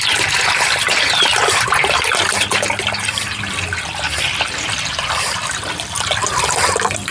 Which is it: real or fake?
real